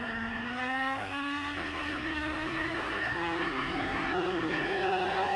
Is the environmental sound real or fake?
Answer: fake